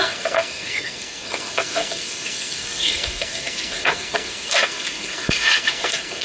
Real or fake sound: fake